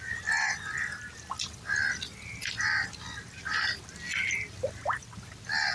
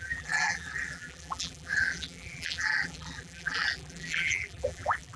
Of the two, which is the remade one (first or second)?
second